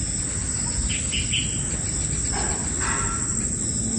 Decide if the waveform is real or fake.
real